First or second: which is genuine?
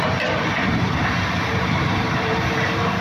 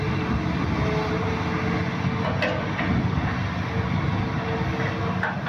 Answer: second